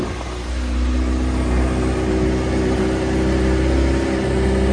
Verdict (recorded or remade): recorded